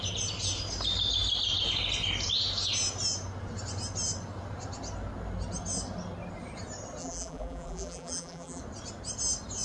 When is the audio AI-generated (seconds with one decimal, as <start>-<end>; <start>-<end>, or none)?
7.0-8.6